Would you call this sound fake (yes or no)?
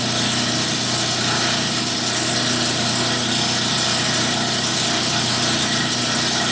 no